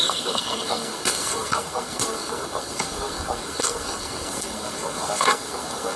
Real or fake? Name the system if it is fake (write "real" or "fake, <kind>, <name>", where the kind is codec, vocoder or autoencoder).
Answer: fake, codec, SNAC